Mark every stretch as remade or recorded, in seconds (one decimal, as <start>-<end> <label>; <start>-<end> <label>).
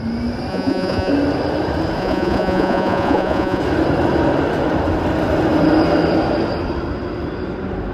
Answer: 0.0-0.5 recorded; 0.5-1.1 remade; 1.1-2.0 recorded; 2.0-3.6 remade; 3.6-7.9 recorded